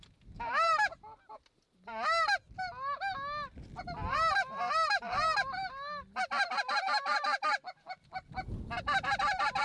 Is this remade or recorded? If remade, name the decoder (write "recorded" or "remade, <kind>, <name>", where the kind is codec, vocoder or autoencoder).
recorded